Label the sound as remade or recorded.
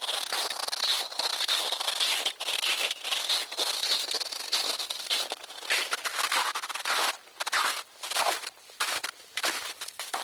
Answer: remade